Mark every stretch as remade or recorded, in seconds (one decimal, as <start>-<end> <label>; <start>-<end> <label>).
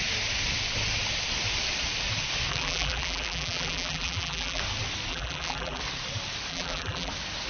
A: 0.0-2.5 recorded; 2.5-4.6 remade; 4.6-5.1 recorded; 5.1-5.8 remade; 5.8-6.5 recorded; 6.5-7.1 remade; 7.1-7.5 recorded